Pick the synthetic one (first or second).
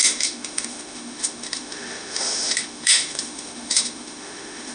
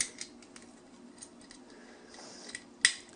first